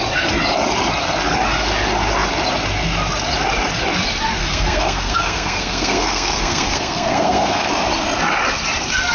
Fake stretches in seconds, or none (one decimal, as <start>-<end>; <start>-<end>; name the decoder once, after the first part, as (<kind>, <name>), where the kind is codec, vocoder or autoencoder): 4.4-7.7 (codec, SNAC)